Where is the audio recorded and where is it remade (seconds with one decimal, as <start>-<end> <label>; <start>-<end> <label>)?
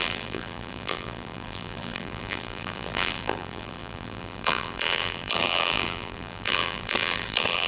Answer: 0.0-7.7 remade